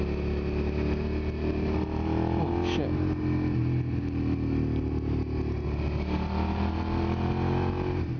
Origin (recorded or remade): recorded